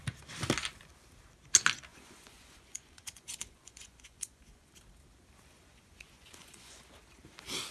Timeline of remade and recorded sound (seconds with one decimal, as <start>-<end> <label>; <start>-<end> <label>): 0.0-1.9 recorded; 1.9-4.7 remade; 4.7-5.7 recorded; 5.7-6.8 remade; 6.8-7.7 recorded